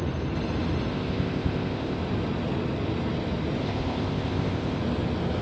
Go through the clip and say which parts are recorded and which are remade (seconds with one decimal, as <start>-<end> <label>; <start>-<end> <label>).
0.0-0.9 recorded; 0.9-2.0 remade; 2.0-3.6 recorded; 3.6-4.8 remade; 4.8-5.4 recorded